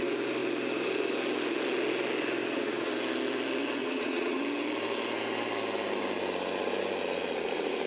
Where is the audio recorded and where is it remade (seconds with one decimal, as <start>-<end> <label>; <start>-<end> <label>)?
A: 0.0-2.4 recorded; 2.4-2.9 remade; 2.9-3.8 recorded; 3.8-4.4 remade; 4.4-7.9 recorded